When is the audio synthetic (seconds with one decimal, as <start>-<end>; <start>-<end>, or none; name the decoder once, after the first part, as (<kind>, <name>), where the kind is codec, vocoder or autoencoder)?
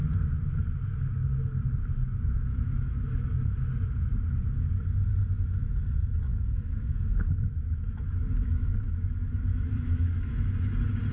2.0-3.7 (autoencoder, DAC-VAE); 6.3-10.3